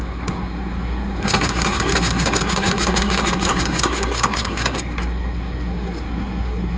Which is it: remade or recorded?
remade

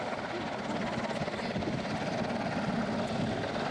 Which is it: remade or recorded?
recorded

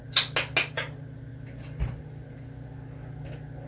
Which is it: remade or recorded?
recorded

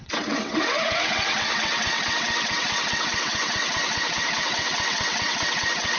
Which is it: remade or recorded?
remade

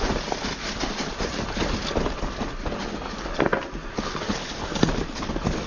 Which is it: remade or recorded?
recorded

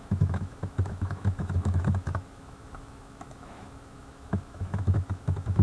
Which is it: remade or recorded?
remade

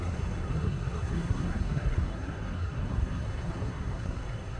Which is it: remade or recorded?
remade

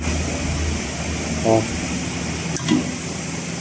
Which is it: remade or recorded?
recorded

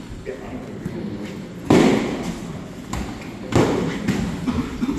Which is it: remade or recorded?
recorded